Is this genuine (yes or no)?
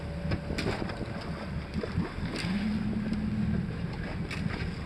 yes